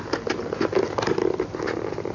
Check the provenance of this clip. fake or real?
real